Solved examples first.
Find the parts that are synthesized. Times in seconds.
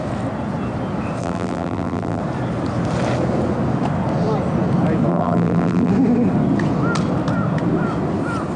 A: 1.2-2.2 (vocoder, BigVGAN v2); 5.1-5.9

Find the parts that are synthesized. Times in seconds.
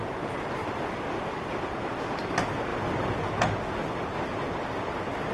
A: 0.6-2.0 (vocoder, BigVGAN v2); 2.7-3.4; 3.8-4.4